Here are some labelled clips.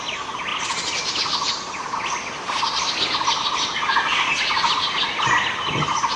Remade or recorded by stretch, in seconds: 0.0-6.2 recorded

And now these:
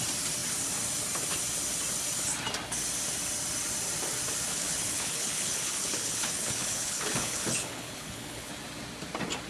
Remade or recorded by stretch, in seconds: 0.0-4.5 recorded; 4.5-8.5 remade; 8.5-9.5 recorded

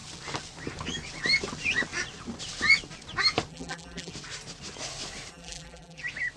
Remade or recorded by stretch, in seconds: 0.0-3.5 recorded; 3.5-4.1 remade; 4.1-5.3 recorded; 5.3-6.0 remade; 6.0-6.4 recorded

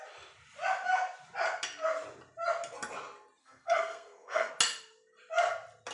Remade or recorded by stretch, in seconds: 0.0-3.4 recorded; 3.4-4.5 remade; 4.5-5.9 recorded

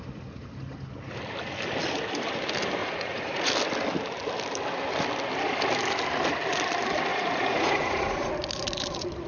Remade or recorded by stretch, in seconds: 0.0-2.8 recorded; 2.8-3.5 remade; 3.5-7.1 recorded; 7.1-8.3 remade; 8.3-9.3 recorded